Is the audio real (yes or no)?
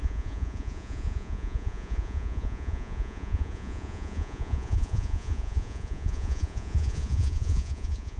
no